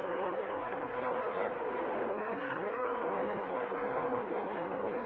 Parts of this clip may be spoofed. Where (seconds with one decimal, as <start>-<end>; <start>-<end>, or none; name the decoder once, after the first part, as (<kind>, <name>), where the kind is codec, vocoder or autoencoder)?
0.0-1.5 (codec, SNAC); 2.1-5.1